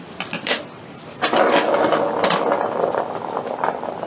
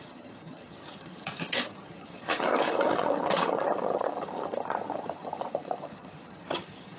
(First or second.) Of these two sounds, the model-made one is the second